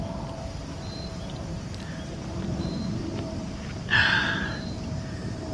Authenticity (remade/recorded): remade